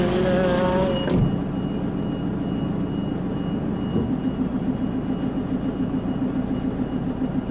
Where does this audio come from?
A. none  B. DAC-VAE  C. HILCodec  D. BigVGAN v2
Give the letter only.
A